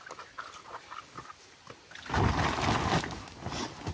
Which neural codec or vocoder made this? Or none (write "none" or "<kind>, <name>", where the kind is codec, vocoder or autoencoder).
none